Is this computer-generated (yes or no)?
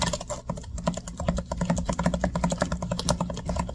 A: no